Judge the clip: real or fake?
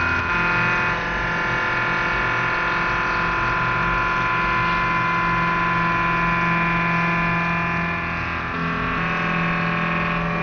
real